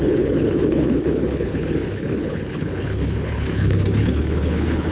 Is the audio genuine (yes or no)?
no